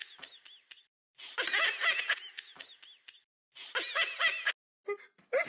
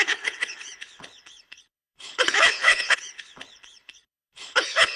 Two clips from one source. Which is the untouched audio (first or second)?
first